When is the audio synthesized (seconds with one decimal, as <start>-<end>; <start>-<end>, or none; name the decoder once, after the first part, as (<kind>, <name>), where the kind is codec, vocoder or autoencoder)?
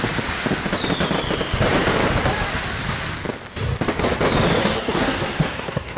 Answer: 4.6-6.0 (codec, SNAC)